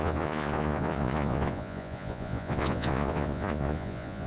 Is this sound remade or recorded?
remade